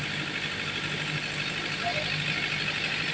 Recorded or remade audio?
recorded